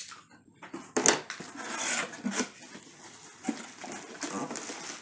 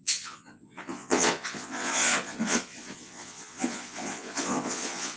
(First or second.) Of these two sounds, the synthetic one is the second